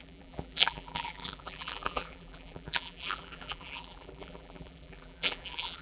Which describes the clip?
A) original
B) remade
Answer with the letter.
B